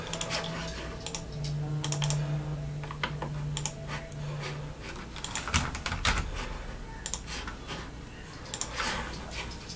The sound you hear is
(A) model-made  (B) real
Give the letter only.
B